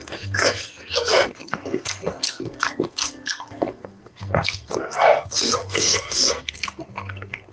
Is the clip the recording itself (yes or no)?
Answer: no